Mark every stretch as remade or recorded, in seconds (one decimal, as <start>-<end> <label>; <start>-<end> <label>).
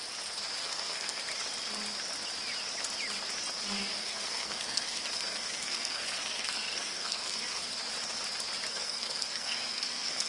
0.0-0.6 recorded; 0.6-1.2 remade; 1.2-3.9 recorded; 3.9-7.7 remade; 7.7-8.7 recorded; 8.7-10.3 remade